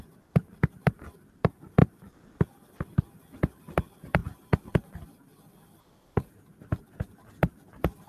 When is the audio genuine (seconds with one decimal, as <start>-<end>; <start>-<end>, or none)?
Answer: 0.0-4.2; 6.9-8.1